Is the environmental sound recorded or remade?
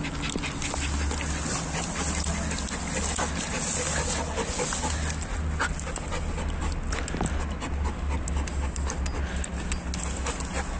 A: recorded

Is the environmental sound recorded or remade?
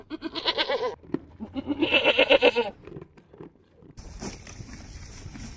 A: remade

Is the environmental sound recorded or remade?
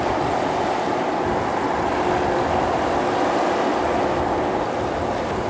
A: recorded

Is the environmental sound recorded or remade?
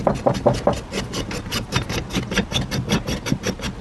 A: recorded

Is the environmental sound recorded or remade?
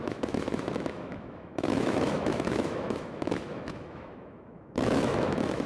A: remade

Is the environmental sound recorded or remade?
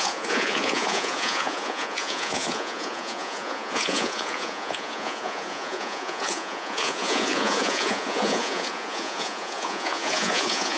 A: remade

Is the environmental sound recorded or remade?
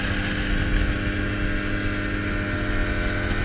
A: recorded